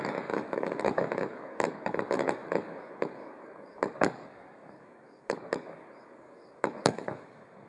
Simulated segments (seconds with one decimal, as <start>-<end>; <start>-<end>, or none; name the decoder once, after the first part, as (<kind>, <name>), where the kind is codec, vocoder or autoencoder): 0.0-7.7 (codec, DAC)